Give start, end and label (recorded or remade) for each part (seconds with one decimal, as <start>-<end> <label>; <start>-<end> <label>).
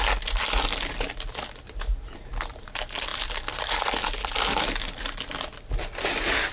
0.0-3.1 recorded; 3.1-4.0 remade; 4.0-6.5 recorded